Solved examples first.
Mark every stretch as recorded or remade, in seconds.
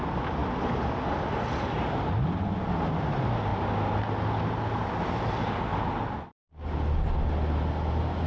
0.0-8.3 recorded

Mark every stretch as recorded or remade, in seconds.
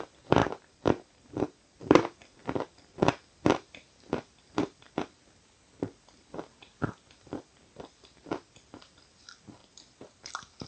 0.0-10.7 remade